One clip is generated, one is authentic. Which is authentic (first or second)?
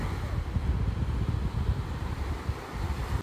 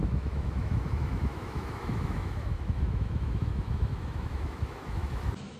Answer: first